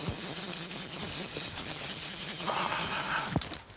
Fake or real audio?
fake